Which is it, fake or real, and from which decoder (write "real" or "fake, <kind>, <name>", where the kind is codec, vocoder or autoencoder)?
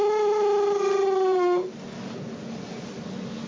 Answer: real